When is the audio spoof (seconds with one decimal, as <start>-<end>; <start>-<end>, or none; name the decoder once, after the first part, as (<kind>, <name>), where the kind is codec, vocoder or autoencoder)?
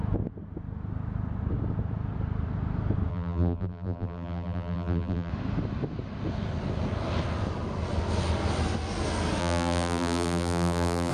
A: 3.1-5.3 (vocoder, BigVGAN v2); 9.4-11.1